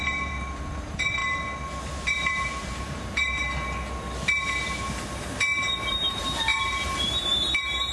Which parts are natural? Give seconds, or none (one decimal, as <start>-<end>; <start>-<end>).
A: 1.2-1.8; 3.4-5.9